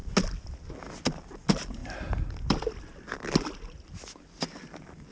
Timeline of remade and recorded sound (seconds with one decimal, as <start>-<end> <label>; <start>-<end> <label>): 0.0-5.1 recorded

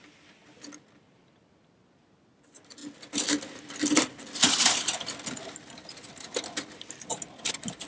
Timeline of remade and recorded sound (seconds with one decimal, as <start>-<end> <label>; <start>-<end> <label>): 0.0-7.9 recorded

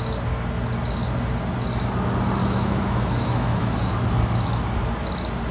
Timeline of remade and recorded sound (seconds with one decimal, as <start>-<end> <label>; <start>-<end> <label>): 0.0-2.4 recorded; 2.4-3.9 remade; 3.9-5.5 recorded